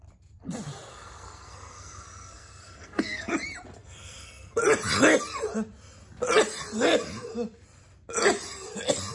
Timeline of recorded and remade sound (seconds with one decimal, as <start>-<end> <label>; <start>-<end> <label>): 0.0-0.9 recorded; 0.9-3.3 remade; 3.3-3.8 recorded; 3.8-4.6 remade; 4.6-9.1 recorded